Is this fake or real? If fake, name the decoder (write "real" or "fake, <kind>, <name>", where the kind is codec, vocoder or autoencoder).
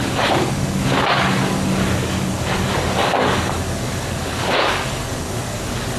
fake, codec, DAC